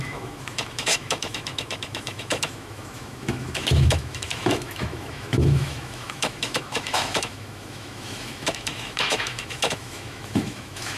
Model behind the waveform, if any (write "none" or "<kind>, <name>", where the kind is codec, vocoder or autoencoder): autoencoder, DAC-VAE